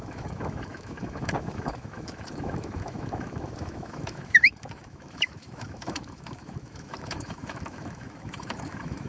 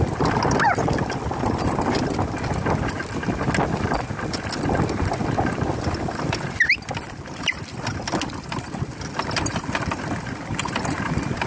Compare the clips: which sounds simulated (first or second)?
first